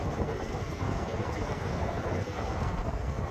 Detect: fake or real fake